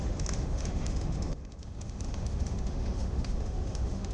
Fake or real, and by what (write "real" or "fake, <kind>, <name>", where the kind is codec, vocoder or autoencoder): fake, autoencoder, DAC-VAE